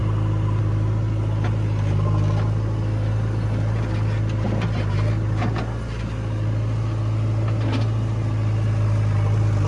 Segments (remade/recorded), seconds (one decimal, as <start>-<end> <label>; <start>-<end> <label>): 0.0-9.7 recorded